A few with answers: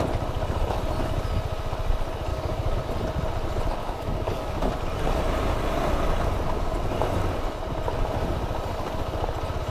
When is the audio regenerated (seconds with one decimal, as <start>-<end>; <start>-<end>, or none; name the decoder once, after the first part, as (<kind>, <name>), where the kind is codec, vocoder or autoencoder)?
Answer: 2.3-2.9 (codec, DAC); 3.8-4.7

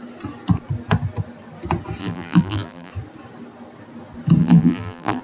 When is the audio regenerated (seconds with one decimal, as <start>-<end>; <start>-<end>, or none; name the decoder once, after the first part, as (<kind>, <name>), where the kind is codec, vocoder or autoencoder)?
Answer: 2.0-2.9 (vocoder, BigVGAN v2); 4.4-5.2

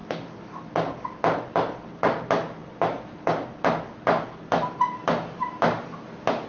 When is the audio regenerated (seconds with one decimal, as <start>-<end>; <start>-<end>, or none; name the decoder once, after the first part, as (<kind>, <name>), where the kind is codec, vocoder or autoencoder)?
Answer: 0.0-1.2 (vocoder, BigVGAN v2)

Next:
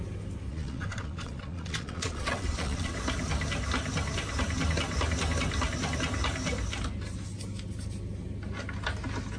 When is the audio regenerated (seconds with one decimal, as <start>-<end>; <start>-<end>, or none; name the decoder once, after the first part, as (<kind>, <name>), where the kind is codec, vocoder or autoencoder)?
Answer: 0.5-2.9 (vocoder, Vocos)